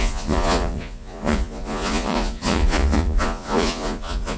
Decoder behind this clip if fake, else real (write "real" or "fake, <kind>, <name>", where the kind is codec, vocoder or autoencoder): fake, vocoder, Vocos